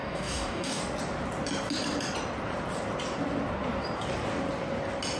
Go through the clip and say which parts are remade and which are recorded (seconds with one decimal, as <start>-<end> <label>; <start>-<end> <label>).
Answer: 0.0-0.8 remade; 0.8-5.2 recorded